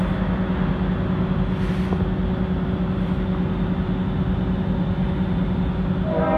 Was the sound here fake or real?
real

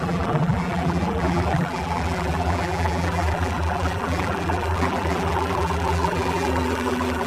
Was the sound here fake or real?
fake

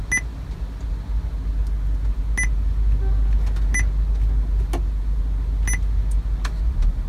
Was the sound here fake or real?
real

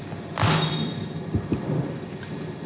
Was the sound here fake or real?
fake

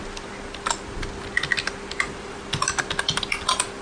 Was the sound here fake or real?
real